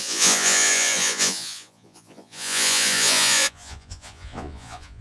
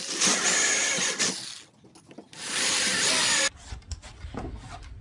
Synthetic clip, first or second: first